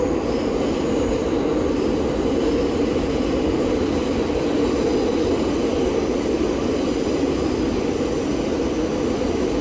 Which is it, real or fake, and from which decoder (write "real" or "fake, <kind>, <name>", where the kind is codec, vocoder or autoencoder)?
real